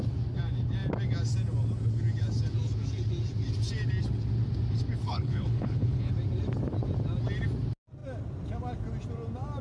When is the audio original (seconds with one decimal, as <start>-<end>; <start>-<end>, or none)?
0.0-5.0; 6.1-9.6